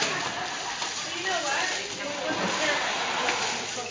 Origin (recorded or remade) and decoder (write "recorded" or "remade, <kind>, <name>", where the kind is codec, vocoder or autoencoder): recorded